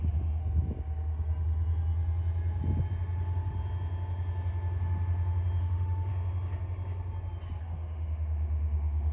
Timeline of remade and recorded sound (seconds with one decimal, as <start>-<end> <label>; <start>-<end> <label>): 0.0-0.4 remade; 0.4-5.6 recorded; 5.6-6.1 remade; 6.1-7.6 recorded; 7.6-9.1 remade

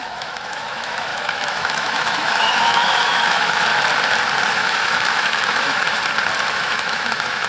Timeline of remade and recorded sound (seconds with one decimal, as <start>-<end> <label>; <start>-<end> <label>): 0.0-3.7 remade; 3.7-4.4 recorded; 4.4-6.0 remade; 6.0-6.5 recorded; 6.5-7.5 remade

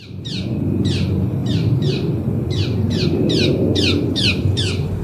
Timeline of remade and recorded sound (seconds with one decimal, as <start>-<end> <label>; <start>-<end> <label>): 0.0-5.0 recorded

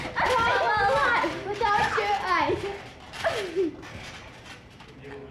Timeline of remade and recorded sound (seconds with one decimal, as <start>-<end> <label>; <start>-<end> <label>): 0.0-5.3 recorded

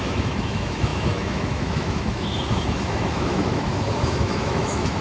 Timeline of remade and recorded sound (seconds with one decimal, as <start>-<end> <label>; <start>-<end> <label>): 0.0-5.0 remade

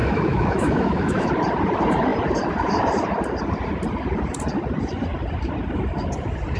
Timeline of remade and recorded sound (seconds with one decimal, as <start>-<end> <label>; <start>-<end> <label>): 0.0-1.3 remade; 1.3-6.6 recorded

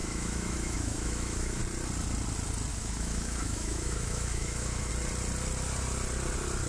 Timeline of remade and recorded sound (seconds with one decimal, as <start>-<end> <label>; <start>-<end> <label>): 0.0-1.6 remade; 1.6-2.7 recorded; 2.7-4.9 remade; 4.9-6.7 recorded

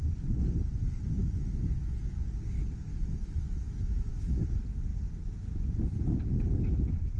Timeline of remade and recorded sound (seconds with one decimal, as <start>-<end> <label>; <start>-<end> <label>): 0.0-1.2 recorded; 1.2-2.0 remade; 2.0-2.9 recorded; 2.9-4.4 remade; 4.4-7.2 recorded